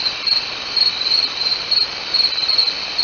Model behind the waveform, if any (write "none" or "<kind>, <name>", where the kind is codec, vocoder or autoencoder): vocoder, BigVGAN v2